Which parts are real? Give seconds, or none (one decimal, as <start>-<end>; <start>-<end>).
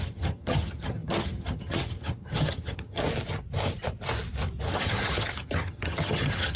3.0-4.7